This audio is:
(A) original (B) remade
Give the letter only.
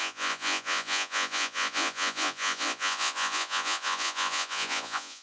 B